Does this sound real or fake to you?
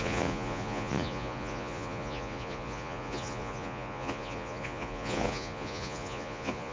fake